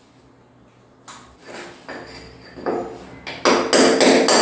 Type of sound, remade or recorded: recorded